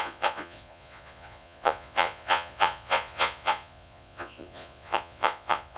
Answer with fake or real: fake